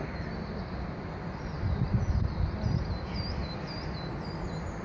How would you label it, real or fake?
real